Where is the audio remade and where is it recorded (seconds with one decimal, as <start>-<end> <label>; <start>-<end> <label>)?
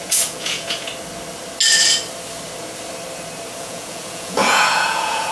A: 0.0-0.9 remade; 0.9-3.6 recorded; 3.6-5.3 remade